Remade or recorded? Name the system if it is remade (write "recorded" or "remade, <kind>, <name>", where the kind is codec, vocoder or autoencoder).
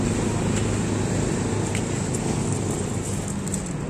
recorded